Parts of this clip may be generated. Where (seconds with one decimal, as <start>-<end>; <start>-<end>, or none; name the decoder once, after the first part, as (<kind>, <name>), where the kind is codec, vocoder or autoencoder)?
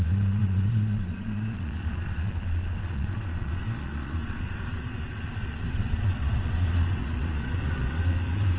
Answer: 0.0-8.6 (vocoder, Vocos)